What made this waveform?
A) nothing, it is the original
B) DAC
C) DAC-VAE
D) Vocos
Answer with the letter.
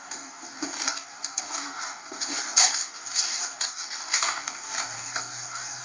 B